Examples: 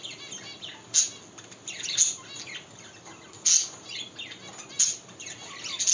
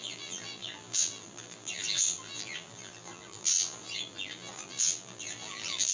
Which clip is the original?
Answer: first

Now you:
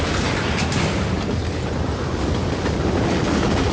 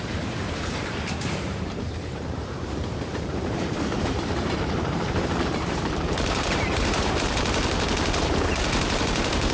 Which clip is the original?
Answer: first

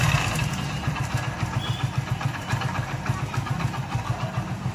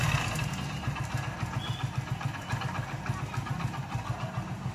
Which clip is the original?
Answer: second